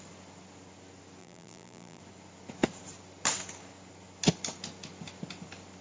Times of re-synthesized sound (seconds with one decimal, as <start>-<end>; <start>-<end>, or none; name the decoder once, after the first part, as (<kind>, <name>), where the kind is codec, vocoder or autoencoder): 1.2-2.0 (vocoder, BigVGAN v2)